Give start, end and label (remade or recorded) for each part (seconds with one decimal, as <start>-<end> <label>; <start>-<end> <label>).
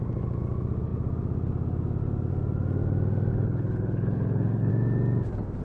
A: 0.0-3.3 recorded; 3.3-4.7 remade; 4.7-5.6 recorded